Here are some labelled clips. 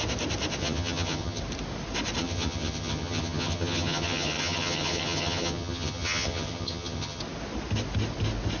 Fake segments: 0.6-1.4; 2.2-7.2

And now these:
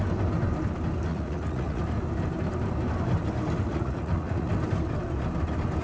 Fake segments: 1.1-1.8; 3.7-4.5

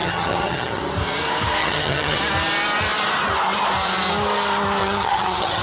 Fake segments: 0.0-0.8; 1.6-2.2; 4.8-5.6

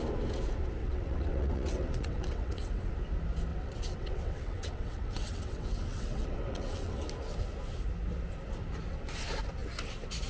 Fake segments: 0.8-2.9; 3.5-7.0

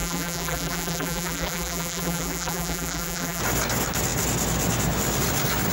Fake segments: 0.0-3.4